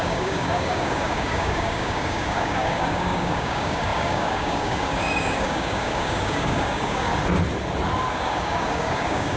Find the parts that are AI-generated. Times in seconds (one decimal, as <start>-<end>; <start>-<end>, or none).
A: 0.0-7.1; 8.1-9.4